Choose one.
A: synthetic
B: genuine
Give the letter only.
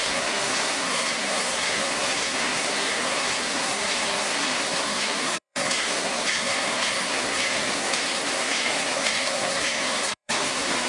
A